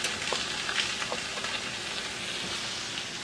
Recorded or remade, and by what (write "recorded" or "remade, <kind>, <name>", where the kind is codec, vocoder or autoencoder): recorded